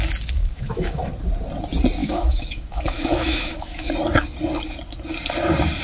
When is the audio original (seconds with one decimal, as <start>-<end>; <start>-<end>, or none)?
0.0-0.4; 1.1-2.0; 3.9-5.8

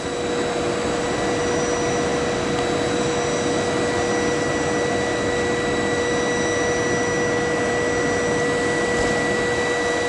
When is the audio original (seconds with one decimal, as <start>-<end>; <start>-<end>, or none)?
0.0-10.1

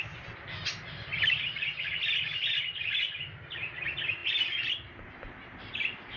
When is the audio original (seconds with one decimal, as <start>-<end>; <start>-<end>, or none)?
0.0-6.2

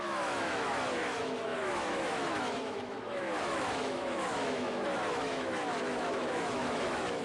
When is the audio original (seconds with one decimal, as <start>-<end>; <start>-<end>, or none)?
none

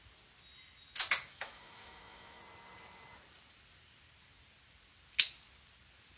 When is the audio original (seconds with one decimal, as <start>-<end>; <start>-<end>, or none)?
0.0-1.3; 2.4-6.2